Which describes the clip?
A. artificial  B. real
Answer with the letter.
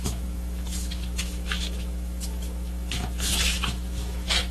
A